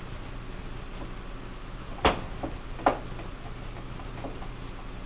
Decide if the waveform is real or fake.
real